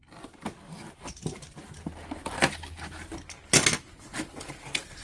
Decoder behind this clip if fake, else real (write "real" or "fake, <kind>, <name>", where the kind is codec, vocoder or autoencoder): real